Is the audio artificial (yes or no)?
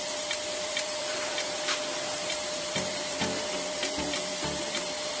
yes